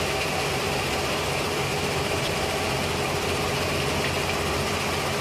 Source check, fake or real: real